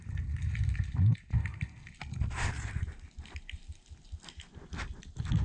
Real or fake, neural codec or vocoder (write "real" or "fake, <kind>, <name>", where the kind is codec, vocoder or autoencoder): real